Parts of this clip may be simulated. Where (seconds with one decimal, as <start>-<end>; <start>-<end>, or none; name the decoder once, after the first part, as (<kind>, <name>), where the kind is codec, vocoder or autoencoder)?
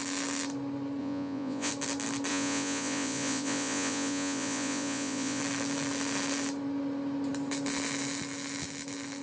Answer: 1.0-1.7 (vocoder, Vocos); 2.3-5.4